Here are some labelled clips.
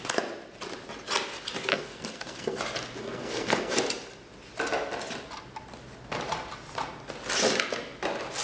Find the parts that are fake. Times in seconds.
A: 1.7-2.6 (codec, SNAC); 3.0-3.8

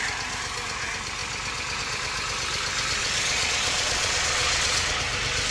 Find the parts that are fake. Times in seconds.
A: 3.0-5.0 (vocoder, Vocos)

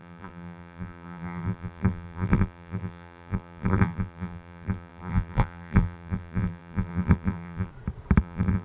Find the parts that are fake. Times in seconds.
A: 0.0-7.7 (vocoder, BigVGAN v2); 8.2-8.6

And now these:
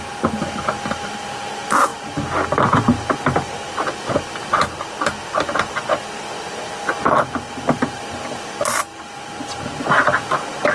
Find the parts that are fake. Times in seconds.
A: none

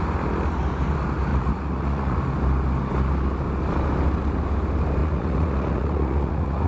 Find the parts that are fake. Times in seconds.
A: 1.3-2.2 (vocoder, Vocos); 5.0-6.7

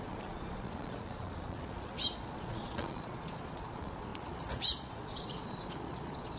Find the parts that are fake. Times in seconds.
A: 0.0-6.4 (vocoder, Vocos)

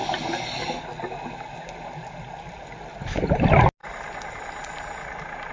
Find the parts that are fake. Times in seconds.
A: none